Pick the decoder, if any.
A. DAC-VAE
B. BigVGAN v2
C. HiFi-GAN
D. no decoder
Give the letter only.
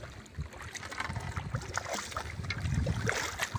D